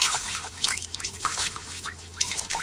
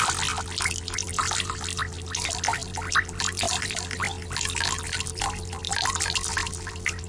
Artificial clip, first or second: first